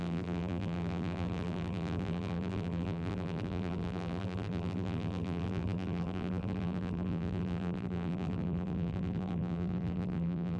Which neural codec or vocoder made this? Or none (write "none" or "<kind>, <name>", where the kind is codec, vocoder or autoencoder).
vocoder, BigVGAN v2